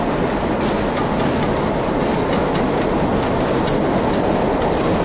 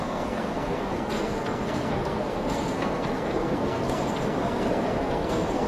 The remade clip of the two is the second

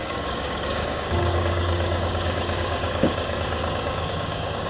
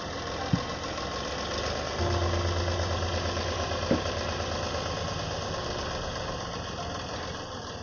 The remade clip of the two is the first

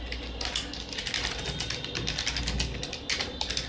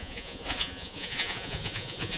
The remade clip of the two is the second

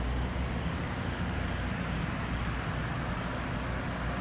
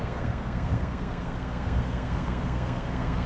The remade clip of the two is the second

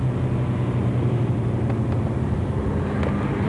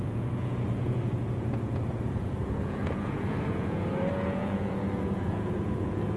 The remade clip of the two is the second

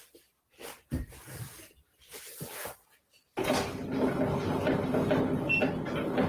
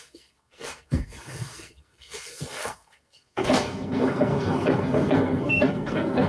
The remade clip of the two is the second